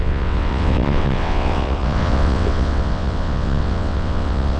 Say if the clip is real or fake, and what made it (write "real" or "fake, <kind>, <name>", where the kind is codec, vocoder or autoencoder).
fake, vocoder, WaveNeXt